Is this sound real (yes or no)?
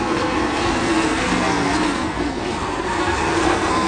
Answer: no